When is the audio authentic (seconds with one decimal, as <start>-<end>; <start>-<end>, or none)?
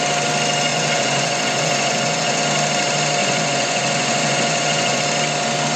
0.0-0.7; 2.4-3.2; 5.0-5.8